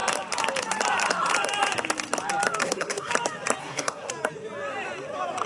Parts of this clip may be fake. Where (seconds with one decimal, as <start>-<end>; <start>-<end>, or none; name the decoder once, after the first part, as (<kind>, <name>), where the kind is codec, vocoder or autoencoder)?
2.6-3.1 (codec, SNAC); 3.6-4.1